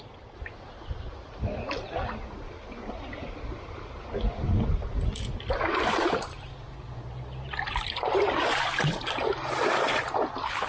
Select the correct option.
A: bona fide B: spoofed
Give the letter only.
A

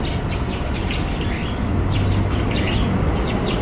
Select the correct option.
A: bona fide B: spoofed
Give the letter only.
A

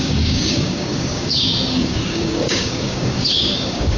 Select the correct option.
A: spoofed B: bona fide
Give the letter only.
A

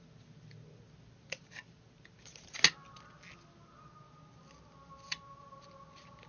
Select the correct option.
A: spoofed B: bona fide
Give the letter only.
B